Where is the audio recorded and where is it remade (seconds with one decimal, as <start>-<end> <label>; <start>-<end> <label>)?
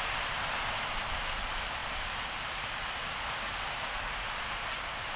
0.0-5.2 recorded